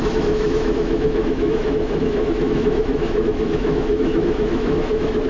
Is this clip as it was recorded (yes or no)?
no